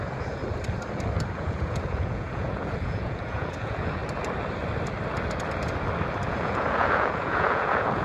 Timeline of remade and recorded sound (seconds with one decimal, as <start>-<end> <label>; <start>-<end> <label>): 0.0-0.4 remade; 0.4-1.3 recorded; 1.3-4.0 remade; 4.0-6.3 recorded; 6.3-8.0 remade